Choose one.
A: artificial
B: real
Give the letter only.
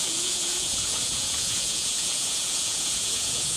A